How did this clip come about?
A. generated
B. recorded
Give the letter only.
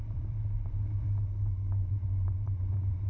A